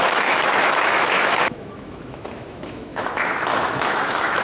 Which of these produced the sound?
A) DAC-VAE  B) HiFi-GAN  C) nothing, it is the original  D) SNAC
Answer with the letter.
A